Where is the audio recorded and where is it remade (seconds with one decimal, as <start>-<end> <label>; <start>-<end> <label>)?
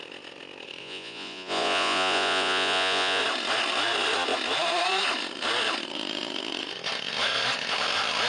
0.0-0.8 recorded; 0.8-3.2 remade; 3.2-8.3 recorded